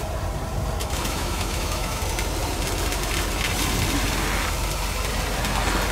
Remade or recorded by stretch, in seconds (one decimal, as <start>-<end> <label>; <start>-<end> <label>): 0.0-0.8 recorded; 0.8-2.0 remade; 2.0-5.9 recorded